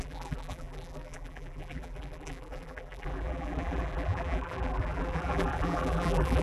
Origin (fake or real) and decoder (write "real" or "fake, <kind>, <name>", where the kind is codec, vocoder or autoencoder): fake, vocoder, BigVGAN v2